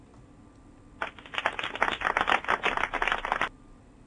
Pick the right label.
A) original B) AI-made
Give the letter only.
A